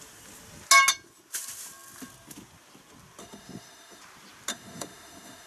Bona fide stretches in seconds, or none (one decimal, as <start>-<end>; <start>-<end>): 0.0-3.2; 4.0-4.5